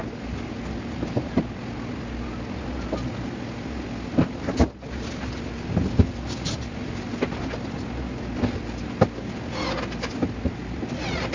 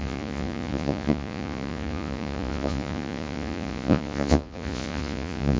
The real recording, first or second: first